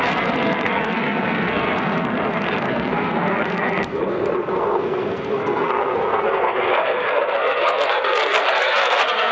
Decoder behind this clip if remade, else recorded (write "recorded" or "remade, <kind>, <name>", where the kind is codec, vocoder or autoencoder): remade, codec, SNAC